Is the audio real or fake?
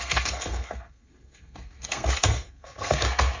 fake